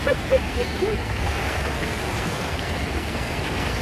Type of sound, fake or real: fake